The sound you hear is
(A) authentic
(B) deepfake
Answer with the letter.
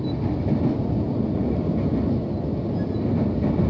A